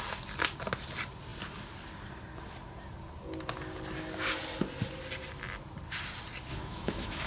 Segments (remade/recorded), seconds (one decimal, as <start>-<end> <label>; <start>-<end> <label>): 0.0-6.5 recorded; 6.5-7.3 remade